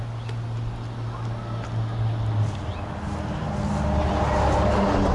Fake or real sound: real